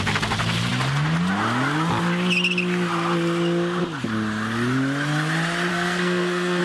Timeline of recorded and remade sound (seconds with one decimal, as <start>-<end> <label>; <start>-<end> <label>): 0.0-5.7 recorded; 5.7-6.6 remade